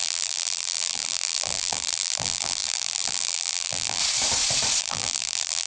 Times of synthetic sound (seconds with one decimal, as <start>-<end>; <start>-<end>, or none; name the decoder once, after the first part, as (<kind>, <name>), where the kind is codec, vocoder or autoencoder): 0.0-4.0 (vocoder, BigVGAN v2); 4.8-5.7